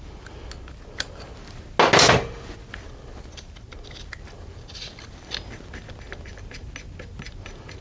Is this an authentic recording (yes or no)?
yes